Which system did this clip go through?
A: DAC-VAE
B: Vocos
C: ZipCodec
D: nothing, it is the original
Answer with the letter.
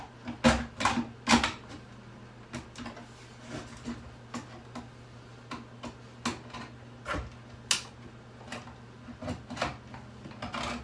D